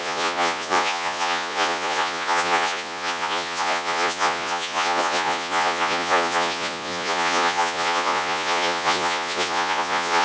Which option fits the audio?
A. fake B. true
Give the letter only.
A